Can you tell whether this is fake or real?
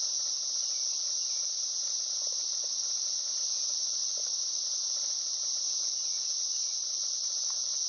real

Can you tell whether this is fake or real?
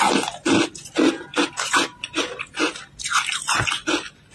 real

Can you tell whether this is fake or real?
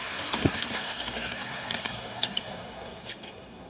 fake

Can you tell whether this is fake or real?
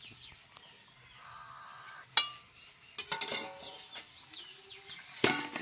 real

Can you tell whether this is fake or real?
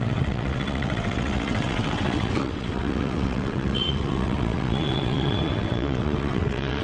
fake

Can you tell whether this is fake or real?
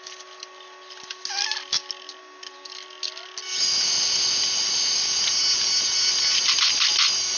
real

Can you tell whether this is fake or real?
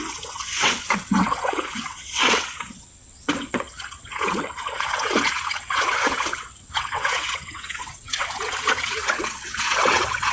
fake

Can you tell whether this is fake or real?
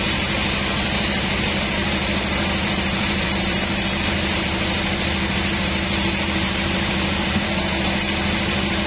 fake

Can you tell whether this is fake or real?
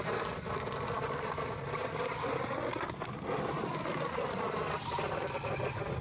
real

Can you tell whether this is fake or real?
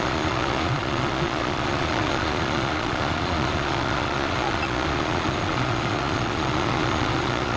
fake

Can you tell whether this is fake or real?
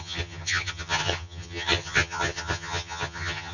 fake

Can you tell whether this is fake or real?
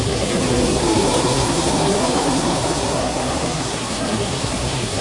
fake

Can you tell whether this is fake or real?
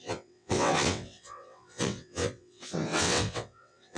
fake